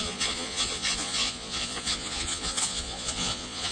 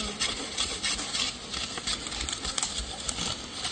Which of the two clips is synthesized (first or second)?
first